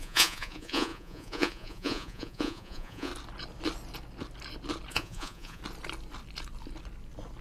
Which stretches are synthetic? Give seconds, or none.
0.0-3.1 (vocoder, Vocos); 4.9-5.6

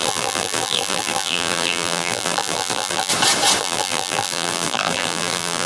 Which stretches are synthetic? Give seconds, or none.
0.0-3.1 (vocoder, BigVGAN v2); 3.6-5.7

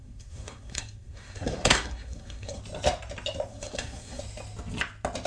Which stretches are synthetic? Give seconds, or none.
0.0-2.6 (codec, SNAC); 3.5-4.2

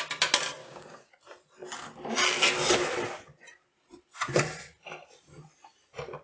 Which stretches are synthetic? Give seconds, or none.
0.6-1.1 (codec, DAC)

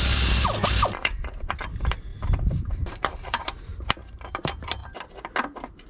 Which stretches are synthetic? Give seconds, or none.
0.0-3.7 (vocoder, BigVGAN v2); 4.3-4.8

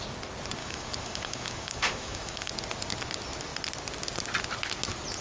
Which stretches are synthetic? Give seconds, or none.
0.6-2.5 (autoencoder, DAC-VAE)

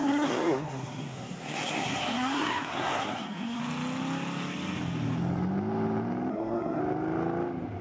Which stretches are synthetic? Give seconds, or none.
0.0-3.6 (codec, SNAC); 6.3-6.8